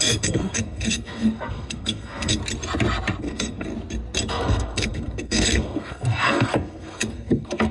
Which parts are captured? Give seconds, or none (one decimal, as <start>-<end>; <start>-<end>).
2.4-3.2; 3.7-4.3